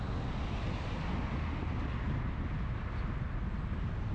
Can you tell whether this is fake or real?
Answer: real